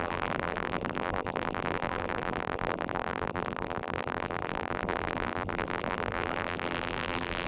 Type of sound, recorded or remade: remade